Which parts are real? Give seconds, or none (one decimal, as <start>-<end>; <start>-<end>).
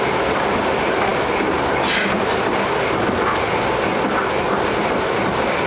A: 0.0-5.7